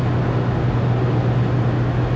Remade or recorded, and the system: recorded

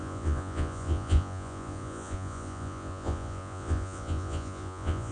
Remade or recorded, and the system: remade, vocoder, Vocos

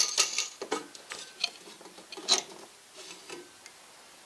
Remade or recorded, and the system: recorded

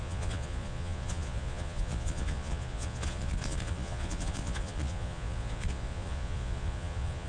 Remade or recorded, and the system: remade, vocoder, Vocos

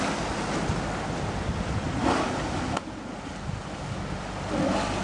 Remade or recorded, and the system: recorded